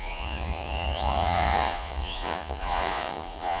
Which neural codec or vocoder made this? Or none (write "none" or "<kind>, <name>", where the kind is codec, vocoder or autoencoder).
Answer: vocoder, Vocos